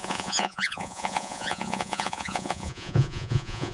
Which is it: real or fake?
fake